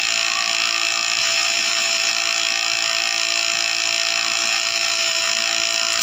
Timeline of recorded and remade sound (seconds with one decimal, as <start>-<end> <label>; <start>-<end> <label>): 0.0-1.2 recorded; 1.2-2.1 remade; 2.1-4.4 recorded; 4.4-5.3 remade; 5.3-6.0 recorded